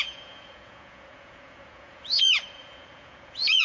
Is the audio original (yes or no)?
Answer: no